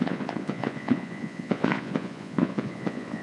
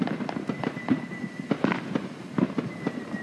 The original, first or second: second